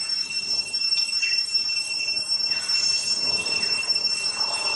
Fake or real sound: real